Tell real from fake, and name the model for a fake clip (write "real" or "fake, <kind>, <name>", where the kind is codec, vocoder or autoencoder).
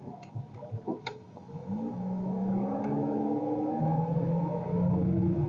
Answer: fake, autoencoder, DAC-VAE